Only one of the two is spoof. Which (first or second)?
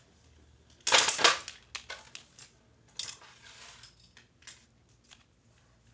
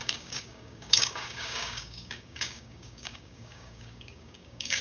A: second